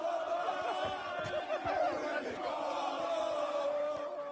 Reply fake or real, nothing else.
fake